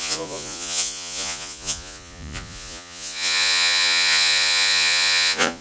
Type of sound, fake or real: fake